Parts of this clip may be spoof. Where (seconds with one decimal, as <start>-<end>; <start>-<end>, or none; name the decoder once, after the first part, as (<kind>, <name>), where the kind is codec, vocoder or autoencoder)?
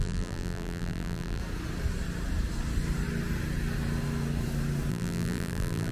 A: 0.0-1.4 (vocoder, BigVGAN v2); 4.9-5.9